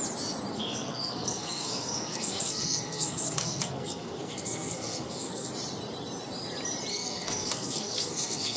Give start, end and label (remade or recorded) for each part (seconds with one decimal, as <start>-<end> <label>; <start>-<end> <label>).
0.0-0.5 recorded; 0.5-5.5 remade; 5.5-6.9 recorded; 6.9-8.6 remade